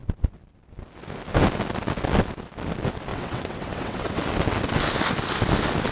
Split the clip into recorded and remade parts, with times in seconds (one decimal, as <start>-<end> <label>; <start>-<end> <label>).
0.0-3.1 recorded; 3.1-4.2 remade; 4.2-5.9 recorded